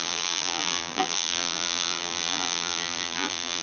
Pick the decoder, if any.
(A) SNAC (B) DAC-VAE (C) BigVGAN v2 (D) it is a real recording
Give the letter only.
C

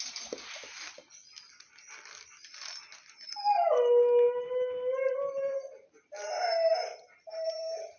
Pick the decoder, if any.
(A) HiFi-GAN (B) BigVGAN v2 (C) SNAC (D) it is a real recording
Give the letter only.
D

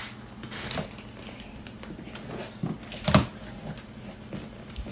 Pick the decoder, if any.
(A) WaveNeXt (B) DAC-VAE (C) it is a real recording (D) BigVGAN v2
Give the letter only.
C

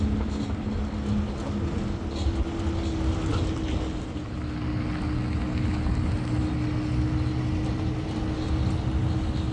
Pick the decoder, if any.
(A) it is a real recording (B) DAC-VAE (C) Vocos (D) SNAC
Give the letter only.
A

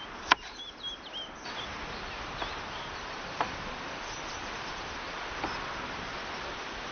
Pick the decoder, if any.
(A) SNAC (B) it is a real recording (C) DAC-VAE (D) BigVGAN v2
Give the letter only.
B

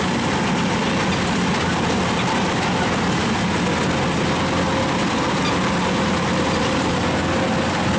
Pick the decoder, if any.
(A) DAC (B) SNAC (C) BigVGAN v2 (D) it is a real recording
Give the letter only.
D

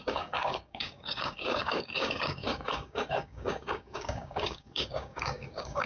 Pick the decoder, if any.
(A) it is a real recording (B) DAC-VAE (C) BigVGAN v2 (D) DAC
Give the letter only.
D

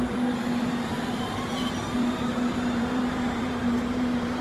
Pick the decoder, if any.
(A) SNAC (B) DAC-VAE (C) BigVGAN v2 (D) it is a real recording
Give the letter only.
C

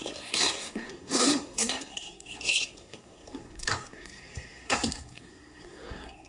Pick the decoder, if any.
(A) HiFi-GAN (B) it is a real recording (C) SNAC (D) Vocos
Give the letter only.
C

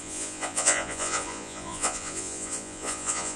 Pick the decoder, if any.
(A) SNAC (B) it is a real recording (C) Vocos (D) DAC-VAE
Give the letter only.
C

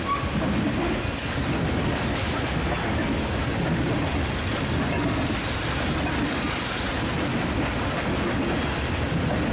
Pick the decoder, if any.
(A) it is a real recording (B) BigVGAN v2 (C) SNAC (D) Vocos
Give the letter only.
A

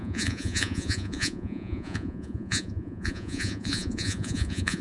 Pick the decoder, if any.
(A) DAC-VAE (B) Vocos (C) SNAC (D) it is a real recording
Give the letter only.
B